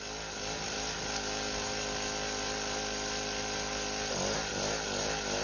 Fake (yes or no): no